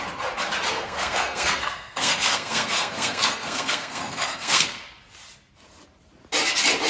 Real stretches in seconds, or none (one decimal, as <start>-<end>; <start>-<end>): 0.0-0.7; 4.8-6.9